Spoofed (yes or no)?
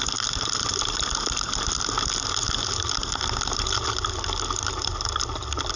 no